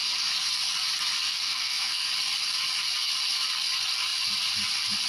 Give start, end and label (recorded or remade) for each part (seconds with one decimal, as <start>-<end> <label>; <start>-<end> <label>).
0.0-1.3 recorded; 1.3-2.1 remade; 2.1-5.1 recorded